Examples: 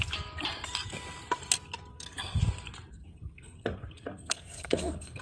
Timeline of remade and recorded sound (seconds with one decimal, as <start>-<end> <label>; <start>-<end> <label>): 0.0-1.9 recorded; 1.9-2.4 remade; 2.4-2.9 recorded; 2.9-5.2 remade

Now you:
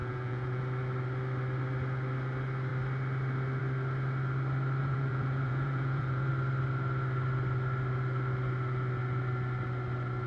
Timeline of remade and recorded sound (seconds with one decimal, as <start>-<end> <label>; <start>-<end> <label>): 0.0-0.6 remade; 0.6-4.8 recorded; 4.8-6.3 remade; 6.3-10.3 recorded

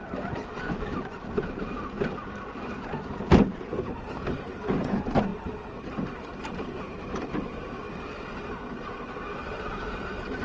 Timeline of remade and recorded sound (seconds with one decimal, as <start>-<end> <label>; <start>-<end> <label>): 0.0-7.8 remade; 7.8-9.5 recorded; 9.5-10.4 remade